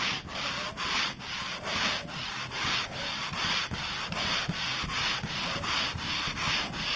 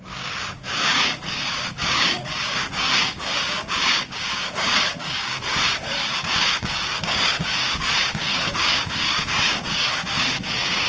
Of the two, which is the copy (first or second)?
second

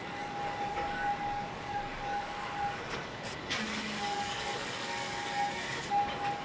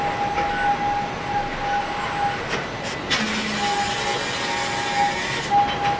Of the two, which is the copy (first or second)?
first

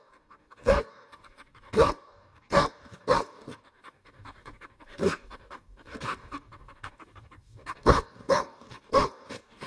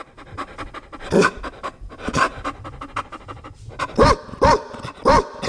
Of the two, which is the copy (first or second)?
first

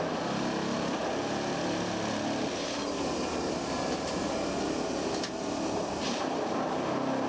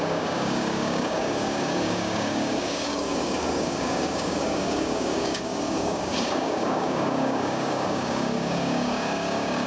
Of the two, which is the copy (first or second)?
second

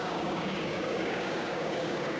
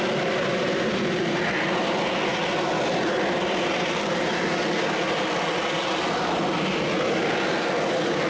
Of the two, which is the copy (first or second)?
first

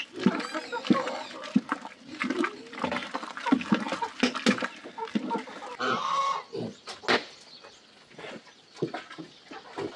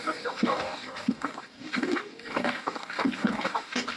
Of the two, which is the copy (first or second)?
second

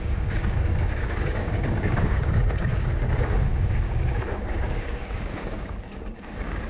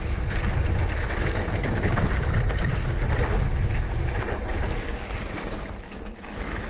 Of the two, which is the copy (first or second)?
first